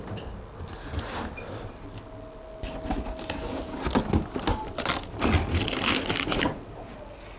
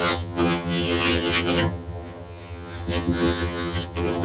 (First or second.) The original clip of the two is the first